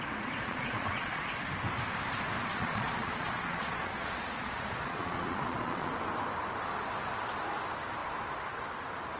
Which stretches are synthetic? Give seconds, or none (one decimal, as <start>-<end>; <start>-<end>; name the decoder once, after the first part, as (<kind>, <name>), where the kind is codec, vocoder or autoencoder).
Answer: 0.4-1.3 (vocoder, Vocos); 2.5-5.9